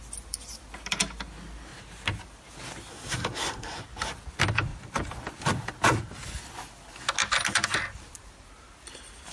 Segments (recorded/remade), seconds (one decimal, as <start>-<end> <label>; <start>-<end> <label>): 0.0-2.9 recorded; 2.9-3.8 remade; 3.8-9.3 recorded